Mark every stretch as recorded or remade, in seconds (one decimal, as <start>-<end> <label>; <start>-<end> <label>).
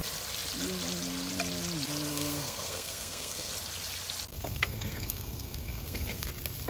0.0-2.1 recorded; 2.1-3.5 remade; 3.5-4.3 recorded; 4.3-6.3 remade; 6.3-6.7 recorded